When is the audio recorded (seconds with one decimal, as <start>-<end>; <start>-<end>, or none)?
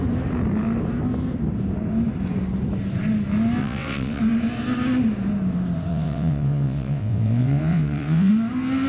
0.0-3.6; 4.2-5.9; 8.3-8.9